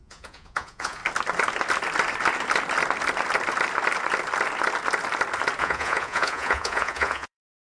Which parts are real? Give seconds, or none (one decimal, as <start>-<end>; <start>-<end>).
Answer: 1.0-5.6